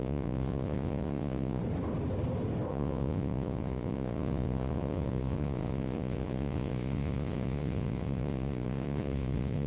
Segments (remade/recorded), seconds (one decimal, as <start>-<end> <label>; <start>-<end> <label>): 0.0-1.6 remade; 1.6-2.7 recorded; 2.7-9.7 remade